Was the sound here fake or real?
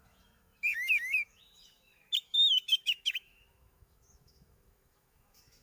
fake